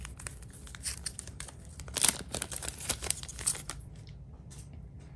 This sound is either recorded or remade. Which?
remade